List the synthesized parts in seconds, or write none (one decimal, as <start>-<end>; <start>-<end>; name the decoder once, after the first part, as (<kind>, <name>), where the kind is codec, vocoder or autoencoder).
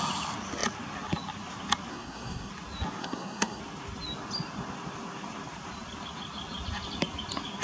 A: 1.9-2.5 (codec, SNAC); 3.0-3.6